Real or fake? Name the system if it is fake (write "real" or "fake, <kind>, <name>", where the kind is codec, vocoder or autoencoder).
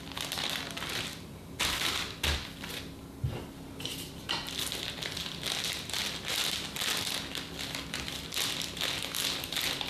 real